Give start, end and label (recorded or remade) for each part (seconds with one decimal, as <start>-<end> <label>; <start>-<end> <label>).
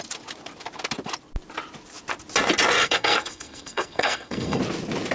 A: 0.0-2.8 recorded; 2.8-4.6 remade; 4.6-5.1 recorded